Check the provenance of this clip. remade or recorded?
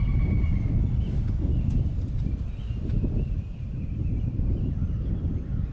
recorded